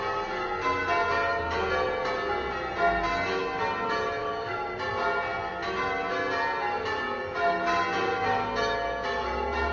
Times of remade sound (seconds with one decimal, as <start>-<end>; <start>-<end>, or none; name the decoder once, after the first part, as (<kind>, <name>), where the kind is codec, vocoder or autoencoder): 4.2-4.8 (vocoder, BigVGAN v2)